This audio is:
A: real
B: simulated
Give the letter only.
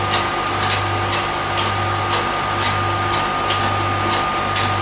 A